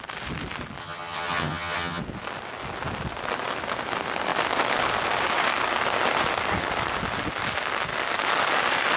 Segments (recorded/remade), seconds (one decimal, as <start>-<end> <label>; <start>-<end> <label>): 0.0-0.8 recorded; 0.8-2.0 remade; 2.0-9.0 recorded